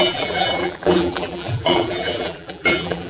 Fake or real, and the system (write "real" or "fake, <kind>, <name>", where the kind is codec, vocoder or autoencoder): fake, vocoder, BigVGAN v2